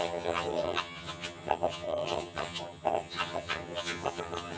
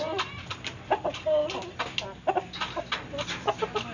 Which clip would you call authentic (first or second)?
second